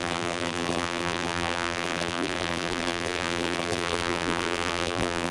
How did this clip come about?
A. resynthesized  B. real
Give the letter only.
A